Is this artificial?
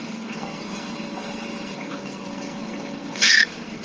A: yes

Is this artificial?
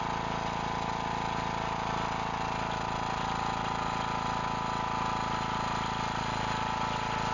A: no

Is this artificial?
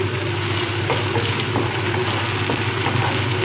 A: no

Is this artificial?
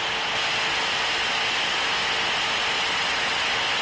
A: no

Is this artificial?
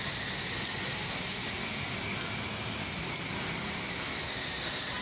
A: no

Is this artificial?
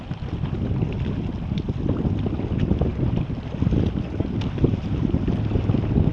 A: no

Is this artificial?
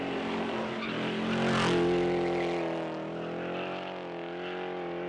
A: no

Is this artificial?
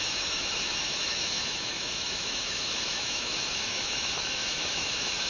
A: yes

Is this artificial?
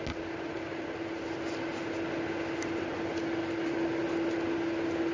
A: no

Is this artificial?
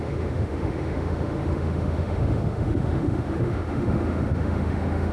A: yes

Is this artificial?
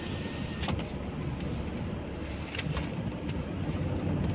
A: no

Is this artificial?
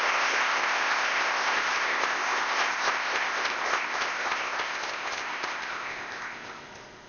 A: yes